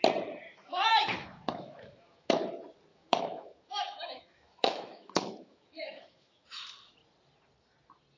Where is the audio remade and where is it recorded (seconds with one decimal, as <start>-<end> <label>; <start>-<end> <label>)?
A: 0.0-0.5 recorded; 0.5-2.4 remade; 2.4-2.9 recorded; 2.9-6.6 remade; 6.6-8.2 recorded